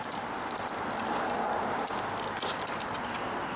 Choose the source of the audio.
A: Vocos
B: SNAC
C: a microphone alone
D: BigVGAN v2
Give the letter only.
C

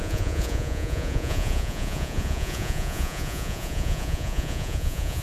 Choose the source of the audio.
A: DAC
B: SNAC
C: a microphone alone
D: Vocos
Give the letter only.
D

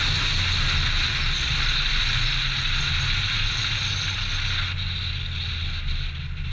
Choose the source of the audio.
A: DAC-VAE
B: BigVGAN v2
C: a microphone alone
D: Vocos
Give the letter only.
C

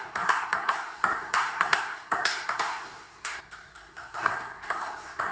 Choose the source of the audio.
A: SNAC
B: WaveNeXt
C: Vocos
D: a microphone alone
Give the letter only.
A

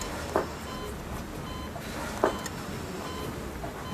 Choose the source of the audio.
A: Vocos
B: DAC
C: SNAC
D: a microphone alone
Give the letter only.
D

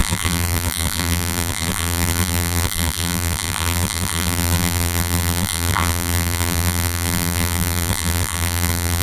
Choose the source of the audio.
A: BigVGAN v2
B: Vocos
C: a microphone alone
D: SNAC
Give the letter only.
A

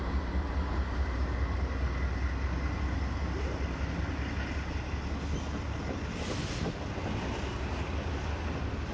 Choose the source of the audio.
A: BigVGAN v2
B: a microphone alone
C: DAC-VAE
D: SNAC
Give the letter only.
B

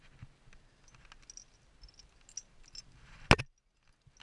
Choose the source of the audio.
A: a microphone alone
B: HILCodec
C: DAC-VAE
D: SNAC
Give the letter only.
A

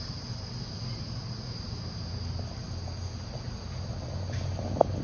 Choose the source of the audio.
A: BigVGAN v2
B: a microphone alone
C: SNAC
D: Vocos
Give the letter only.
B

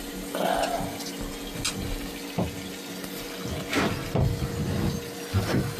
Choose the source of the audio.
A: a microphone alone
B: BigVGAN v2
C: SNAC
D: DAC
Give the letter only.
A